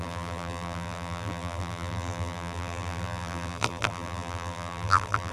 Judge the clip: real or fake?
fake